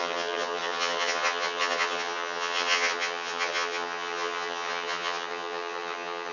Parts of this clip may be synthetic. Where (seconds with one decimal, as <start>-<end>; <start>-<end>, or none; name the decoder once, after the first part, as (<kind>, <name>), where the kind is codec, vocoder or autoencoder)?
0.0-6.3 (vocoder, HiFi-GAN)